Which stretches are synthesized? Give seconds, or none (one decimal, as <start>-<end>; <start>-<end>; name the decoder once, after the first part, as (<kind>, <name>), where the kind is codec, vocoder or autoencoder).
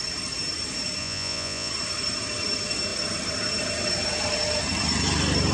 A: 1.0-1.7 (vocoder, Vocos)